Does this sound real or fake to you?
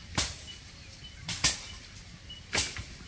real